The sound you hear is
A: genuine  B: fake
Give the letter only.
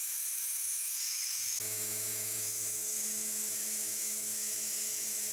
B